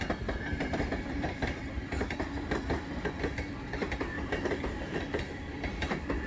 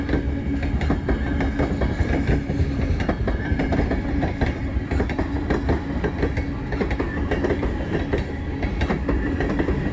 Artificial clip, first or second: first